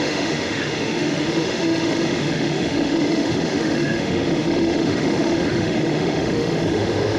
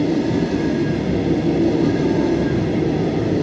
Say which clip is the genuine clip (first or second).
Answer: second